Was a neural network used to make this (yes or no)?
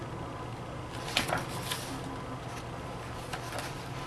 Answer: no